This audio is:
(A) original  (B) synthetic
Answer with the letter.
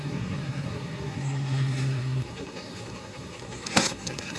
B